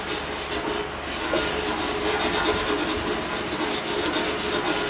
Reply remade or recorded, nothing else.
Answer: recorded